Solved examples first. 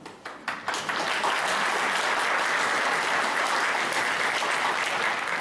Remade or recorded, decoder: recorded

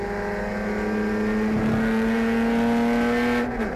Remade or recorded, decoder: recorded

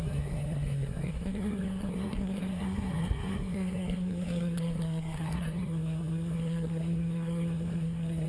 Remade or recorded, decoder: remade, codec, SNAC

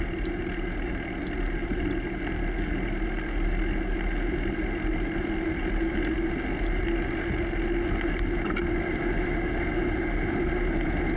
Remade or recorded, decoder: recorded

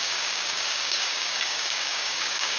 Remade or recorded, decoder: remade, codec, DAC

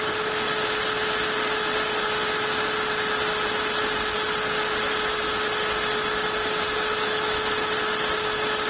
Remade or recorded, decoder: recorded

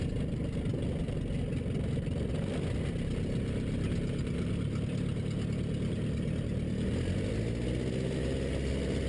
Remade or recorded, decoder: recorded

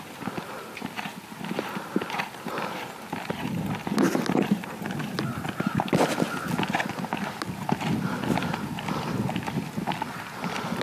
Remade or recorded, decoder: recorded